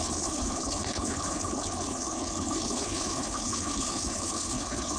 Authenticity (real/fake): fake